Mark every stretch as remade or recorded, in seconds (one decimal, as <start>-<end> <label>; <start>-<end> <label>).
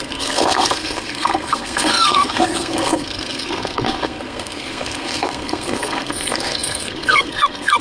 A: 0.0-7.8 remade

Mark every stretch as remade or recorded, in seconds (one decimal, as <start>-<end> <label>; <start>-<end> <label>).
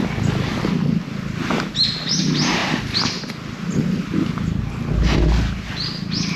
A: 0.0-6.4 recorded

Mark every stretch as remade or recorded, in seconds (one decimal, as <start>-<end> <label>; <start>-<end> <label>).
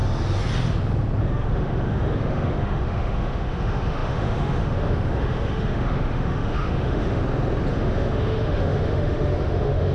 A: 0.0-1.2 recorded; 1.2-7.2 remade; 7.2-7.7 recorded; 7.7-9.9 remade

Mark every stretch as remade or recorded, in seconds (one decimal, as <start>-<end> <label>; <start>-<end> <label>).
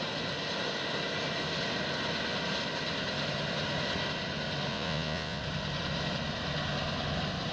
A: 0.0-4.7 recorded; 4.7-5.4 remade; 5.4-7.5 recorded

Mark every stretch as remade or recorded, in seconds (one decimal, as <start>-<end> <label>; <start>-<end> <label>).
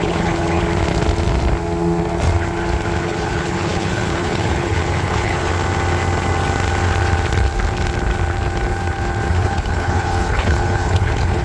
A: 0.0-0.6 remade; 0.6-3.0 recorded; 3.0-5.5 remade; 5.5-9.3 recorded; 9.3-11.4 remade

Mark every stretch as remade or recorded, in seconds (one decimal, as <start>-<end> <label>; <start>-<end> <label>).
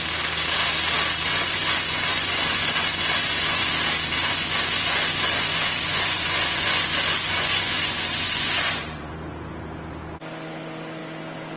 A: 0.0-1.3 recorded; 1.3-3.7 remade; 3.7-4.2 recorded; 4.2-9.1 remade; 9.1-11.6 recorded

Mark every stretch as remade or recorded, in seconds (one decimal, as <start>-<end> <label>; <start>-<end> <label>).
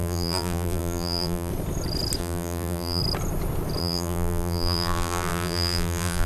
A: 0.0-1.5 remade; 1.5-2.2 recorded; 2.2-3.0 remade; 3.0-3.8 recorded; 3.8-6.3 remade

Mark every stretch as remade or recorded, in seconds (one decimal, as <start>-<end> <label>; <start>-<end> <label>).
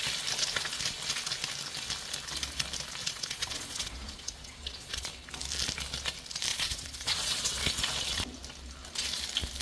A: 0.0-3.0 recorded; 3.0-5.1 remade; 5.1-6.5 recorded; 6.5-7.6 remade; 7.6-9.6 recorded